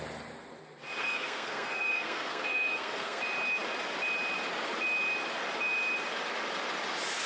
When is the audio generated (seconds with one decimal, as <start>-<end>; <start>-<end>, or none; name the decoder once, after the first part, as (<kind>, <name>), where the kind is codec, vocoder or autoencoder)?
1.0-3.2 (codec, SNAC)